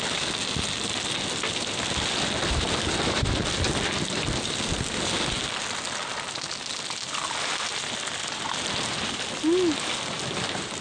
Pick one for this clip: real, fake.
real